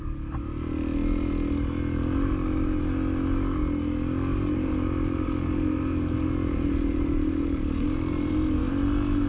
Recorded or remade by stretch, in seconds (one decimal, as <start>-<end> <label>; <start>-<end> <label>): 0.0-4.3 recorded; 4.3-8.7 remade; 8.7-9.3 recorded